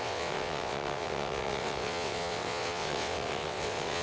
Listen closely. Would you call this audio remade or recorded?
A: remade